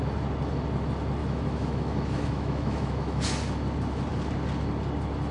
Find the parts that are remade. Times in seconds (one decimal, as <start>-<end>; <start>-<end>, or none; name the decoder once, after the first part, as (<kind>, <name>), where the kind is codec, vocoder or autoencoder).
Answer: 1.2-3.2 (autoencoder, DAC-VAE)